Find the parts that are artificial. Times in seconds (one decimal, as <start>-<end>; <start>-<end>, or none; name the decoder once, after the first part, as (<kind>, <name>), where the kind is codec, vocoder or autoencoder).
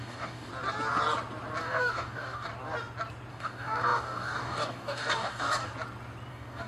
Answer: 0.0-0.5 (codec, DAC); 1.6-2.5; 3.3-5.7; 6.3-6.7